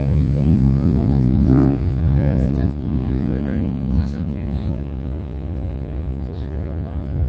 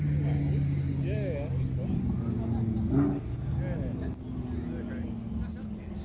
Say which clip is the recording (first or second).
second